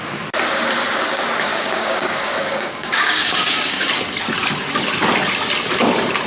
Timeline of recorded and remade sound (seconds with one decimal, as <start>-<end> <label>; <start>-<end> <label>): 0.0-1.5 recorded; 1.5-3.9 remade; 3.9-6.3 recorded